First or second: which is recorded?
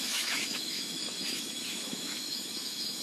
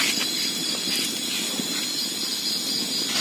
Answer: second